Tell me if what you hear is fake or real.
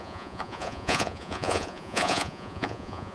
fake